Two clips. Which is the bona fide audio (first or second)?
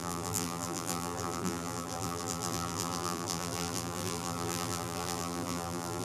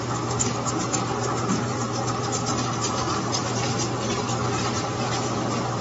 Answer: second